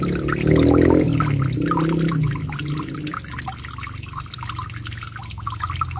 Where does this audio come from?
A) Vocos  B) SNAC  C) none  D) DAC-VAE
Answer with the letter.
C